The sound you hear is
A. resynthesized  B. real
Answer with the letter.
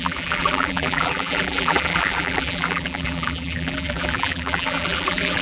A